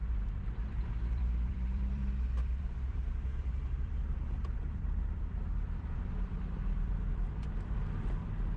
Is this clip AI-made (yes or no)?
yes